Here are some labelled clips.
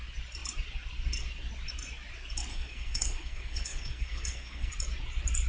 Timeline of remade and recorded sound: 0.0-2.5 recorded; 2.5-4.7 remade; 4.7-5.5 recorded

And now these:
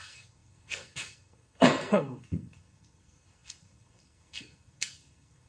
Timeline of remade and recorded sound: 0.0-5.5 remade

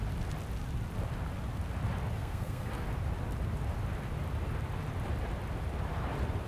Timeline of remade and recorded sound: 0.0-2.2 recorded; 2.2-2.7 remade; 2.7-6.5 recorded

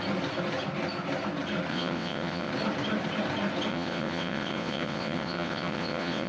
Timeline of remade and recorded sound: 0.0-1.7 recorded; 1.7-2.5 remade; 2.5-3.7 recorded; 3.7-6.3 remade

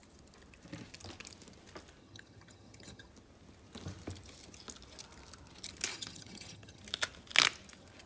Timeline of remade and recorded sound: 0.0-2.0 recorded; 2.0-3.1 remade; 3.1-5.9 recorded; 5.9-6.8 remade; 6.8-8.1 recorded

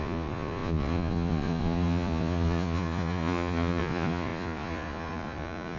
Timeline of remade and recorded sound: 0.0-5.8 remade